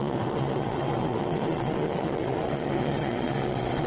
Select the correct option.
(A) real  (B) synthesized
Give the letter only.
B